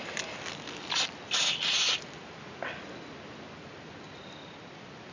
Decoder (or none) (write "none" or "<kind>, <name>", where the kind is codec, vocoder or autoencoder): none